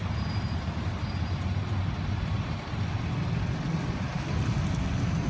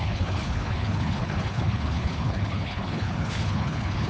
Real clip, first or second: first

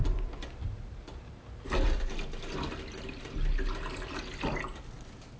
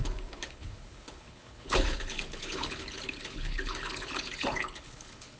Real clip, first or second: first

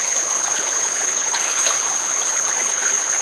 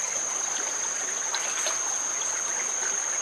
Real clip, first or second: second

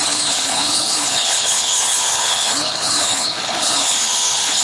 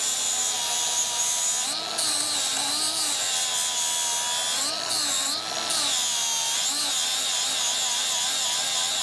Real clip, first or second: second